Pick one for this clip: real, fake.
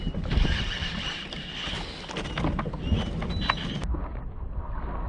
real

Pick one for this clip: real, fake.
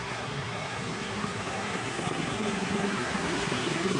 fake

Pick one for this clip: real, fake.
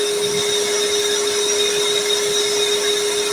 real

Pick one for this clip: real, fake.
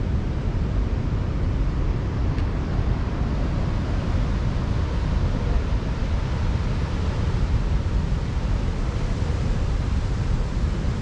real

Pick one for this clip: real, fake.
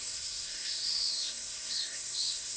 fake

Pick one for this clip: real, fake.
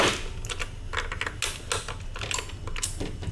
real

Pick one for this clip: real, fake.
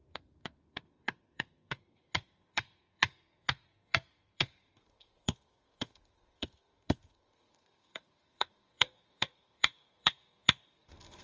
fake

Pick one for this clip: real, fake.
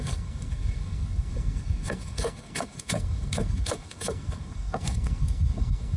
fake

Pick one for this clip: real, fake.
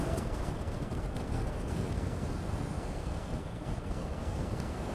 fake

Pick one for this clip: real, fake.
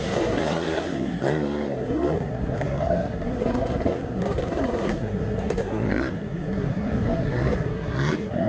fake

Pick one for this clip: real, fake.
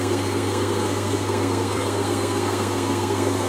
fake